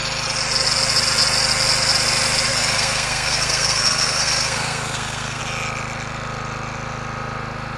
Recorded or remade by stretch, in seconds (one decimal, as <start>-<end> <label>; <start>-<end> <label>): 0.0-2.5 recorded; 2.5-5.4 remade; 5.4-7.8 recorded